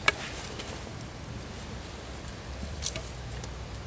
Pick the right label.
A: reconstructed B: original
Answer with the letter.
B